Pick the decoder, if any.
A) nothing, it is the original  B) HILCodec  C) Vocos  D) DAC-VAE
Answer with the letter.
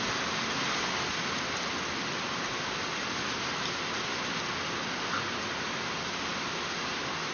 A